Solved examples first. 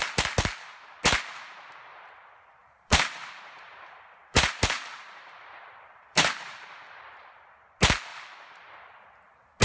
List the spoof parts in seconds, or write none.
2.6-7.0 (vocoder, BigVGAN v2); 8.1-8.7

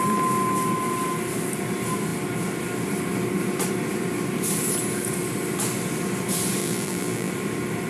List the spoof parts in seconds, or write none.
6.6-7.3 (vocoder, BigVGAN v2)

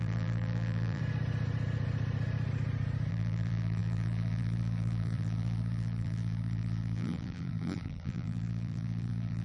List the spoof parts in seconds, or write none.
0.0-1.0 (vocoder, BigVGAN v2); 3.1-9.4